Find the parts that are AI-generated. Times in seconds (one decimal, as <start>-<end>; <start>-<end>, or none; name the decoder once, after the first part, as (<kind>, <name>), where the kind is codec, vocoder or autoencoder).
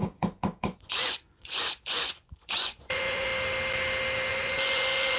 0.0-3.3 (vocoder, Vocos); 4.3-5.2